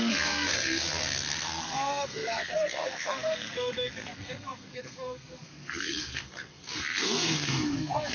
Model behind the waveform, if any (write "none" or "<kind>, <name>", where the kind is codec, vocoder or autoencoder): codec, SNAC